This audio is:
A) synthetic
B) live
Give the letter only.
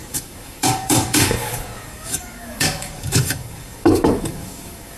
A